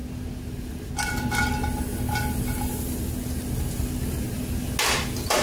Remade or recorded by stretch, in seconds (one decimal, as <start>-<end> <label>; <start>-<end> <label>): 0.0-5.4 recorded